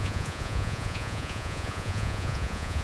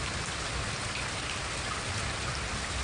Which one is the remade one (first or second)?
first